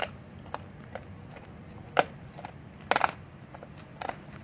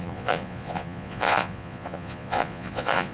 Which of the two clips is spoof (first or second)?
second